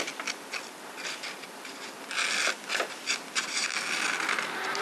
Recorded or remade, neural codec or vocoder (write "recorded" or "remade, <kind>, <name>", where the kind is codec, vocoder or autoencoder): recorded